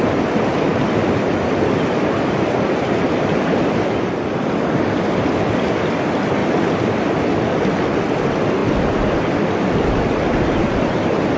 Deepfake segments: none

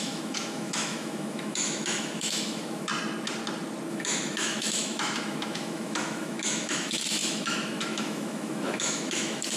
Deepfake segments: 0.0-2.9 (autoencoder, DAC-VAE); 3.9-9.6

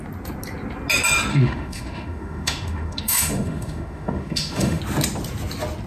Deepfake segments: 1.3-4.8 (autoencoder, DAC-VAE)

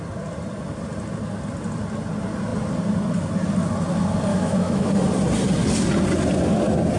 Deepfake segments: 4.3-4.9 (autoencoder, DAC-VAE)

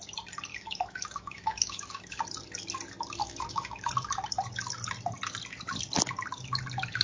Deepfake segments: 0.5-2.2 (autoencoder, DAC-VAE); 3.2-3.9